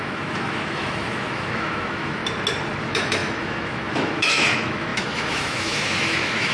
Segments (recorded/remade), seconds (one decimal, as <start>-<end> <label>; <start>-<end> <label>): 0.0-2.2 remade; 2.2-2.8 recorded; 2.8-6.5 remade